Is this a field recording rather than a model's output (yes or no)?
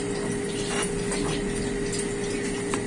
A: yes